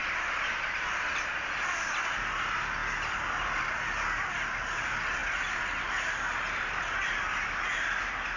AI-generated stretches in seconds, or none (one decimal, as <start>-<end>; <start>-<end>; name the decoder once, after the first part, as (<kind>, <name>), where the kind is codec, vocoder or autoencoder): none